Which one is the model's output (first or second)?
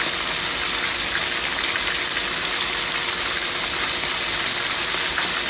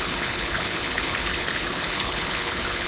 second